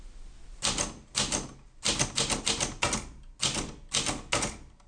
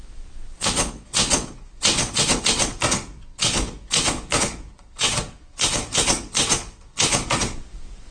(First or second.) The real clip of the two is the first